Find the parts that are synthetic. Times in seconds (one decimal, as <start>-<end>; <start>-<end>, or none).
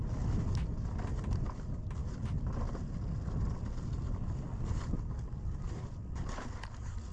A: none